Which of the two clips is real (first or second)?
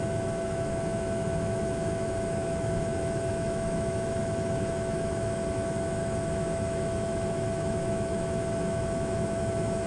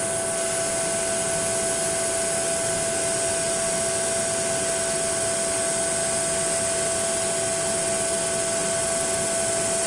second